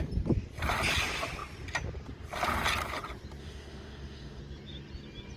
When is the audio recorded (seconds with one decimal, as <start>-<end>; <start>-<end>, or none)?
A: 0.0-3.4; 4.4-5.4